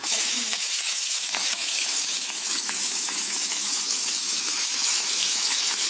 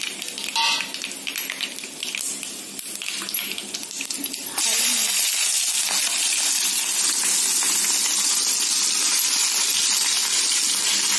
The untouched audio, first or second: second